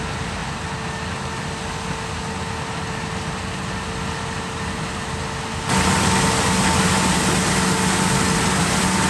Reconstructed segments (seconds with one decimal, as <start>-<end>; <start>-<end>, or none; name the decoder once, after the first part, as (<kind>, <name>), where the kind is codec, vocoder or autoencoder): none